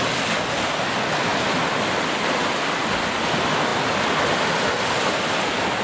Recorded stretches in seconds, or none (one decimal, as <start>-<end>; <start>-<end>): 0.0-5.8